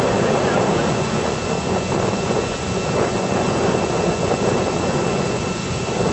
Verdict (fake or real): fake